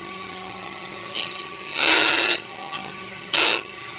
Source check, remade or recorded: remade